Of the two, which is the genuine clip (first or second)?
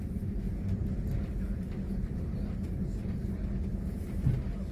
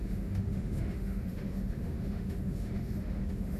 first